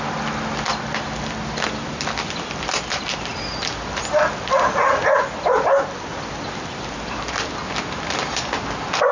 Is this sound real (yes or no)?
yes